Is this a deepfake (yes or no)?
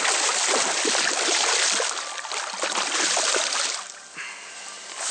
no